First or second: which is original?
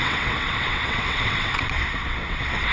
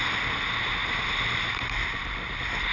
second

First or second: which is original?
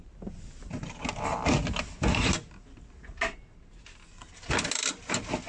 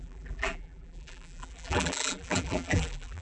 first